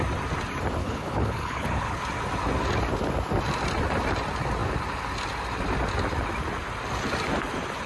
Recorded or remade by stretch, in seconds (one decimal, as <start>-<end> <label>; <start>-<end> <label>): 0.0-0.8 recorded; 0.8-2.0 remade; 2.0-7.9 recorded